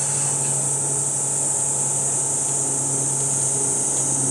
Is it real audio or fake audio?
real